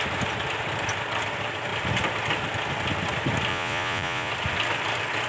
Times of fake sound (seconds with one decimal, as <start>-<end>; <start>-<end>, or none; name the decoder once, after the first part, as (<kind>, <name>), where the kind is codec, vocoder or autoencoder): 3.5-4.3 (vocoder, Vocos)